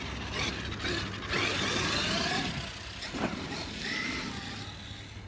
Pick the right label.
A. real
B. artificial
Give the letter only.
A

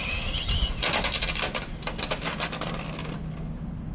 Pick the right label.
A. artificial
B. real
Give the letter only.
B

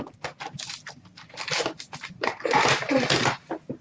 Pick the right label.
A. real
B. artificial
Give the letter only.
B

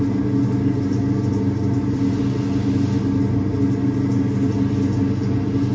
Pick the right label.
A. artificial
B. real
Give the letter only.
B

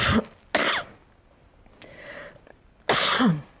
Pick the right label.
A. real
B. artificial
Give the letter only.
A